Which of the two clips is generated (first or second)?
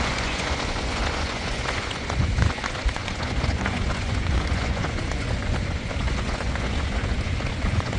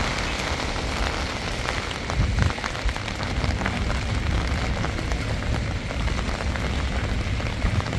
first